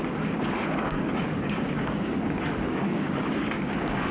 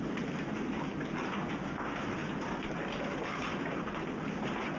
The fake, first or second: first